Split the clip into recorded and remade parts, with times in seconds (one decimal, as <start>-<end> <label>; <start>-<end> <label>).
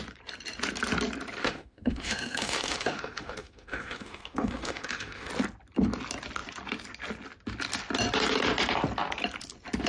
0.0-1.4 recorded; 1.4-5.3 remade; 5.3-9.9 recorded